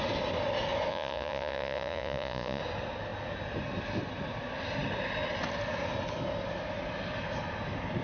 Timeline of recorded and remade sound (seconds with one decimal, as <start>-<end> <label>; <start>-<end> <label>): 0.0-0.9 recorded; 0.9-2.6 remade; 2.6-8.0 recorded